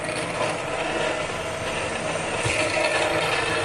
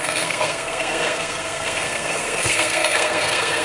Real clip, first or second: first